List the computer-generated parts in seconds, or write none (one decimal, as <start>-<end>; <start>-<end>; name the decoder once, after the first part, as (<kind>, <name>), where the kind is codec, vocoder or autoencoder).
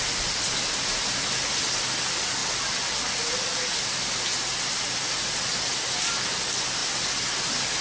none